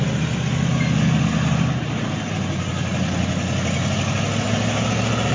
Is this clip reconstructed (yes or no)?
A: no